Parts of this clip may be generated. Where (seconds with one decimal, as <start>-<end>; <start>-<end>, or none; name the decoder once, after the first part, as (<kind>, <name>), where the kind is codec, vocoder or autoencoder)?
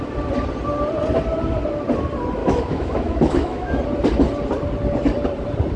2.4-3.8 (autoencoder, DAC-VAE)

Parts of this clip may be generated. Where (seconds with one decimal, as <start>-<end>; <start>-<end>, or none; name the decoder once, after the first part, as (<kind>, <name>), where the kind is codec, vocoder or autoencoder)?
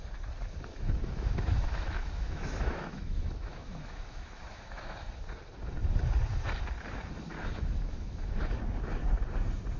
0.7-5.2 (autoencoder, DAC-VAE); 7.3-8.4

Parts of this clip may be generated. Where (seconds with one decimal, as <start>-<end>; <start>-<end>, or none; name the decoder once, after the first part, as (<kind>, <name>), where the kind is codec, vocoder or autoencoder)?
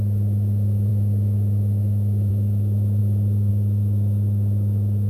0.0-5.1 (autoencoder, DAC-VAE)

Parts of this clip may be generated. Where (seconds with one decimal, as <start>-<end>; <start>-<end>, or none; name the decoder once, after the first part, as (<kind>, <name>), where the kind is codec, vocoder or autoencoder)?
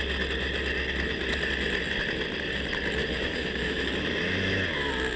3.0-3.9 (autoencoder, DAC-VAE)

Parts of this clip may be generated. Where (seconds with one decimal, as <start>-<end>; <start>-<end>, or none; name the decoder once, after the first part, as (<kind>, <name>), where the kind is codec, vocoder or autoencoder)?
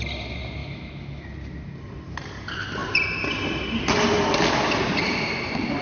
0.6-1.3 (autoencoder, DAC-VAE)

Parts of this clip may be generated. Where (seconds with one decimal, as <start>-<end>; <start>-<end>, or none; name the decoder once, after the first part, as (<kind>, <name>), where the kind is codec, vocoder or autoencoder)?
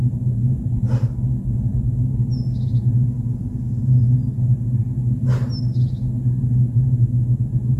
none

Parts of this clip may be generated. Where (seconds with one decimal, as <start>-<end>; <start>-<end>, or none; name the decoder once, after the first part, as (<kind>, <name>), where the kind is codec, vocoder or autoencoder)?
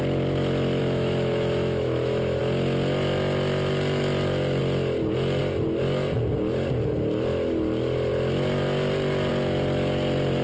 0.8-2.4 (autoencoder, DAC-VAE)